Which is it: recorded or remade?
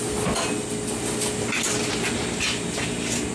recorded